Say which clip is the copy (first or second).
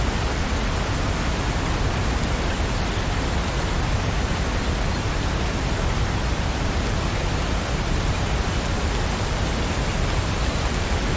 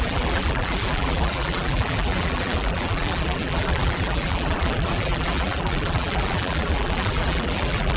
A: second